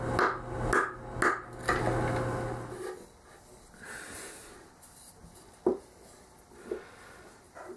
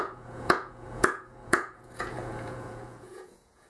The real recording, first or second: first